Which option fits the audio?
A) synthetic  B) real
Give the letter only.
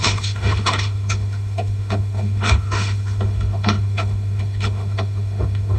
A